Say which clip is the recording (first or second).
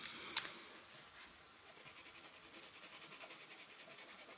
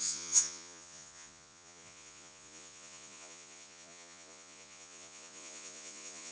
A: first